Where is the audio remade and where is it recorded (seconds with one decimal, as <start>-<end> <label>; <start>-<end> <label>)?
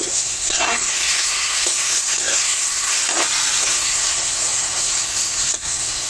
0.0-3.0 remade; 3.0-3.6 recorded; 3.6-6.1 remade